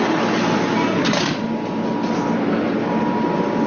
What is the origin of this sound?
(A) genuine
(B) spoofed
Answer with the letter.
A